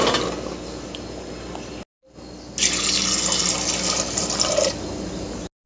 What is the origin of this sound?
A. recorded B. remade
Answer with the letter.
A